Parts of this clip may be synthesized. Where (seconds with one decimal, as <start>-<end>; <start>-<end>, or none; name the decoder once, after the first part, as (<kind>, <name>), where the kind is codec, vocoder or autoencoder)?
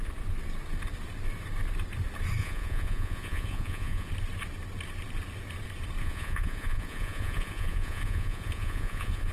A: 2.4-4.1 (vocoder, Vocos); 6.0-9.3